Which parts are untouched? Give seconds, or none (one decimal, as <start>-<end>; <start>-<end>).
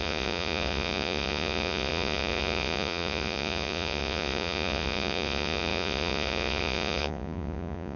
none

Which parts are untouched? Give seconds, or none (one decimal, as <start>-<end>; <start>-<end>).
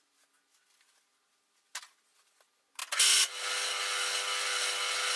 0.0-5.2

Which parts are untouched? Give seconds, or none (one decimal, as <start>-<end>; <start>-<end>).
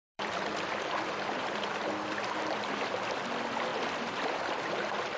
3.1-3.7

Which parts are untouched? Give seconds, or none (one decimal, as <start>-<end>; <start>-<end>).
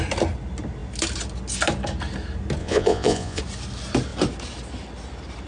0.0-2.6; 3.4-5.5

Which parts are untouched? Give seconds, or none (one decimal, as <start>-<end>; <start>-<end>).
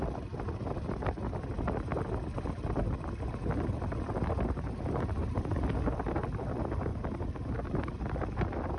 0.0-8.8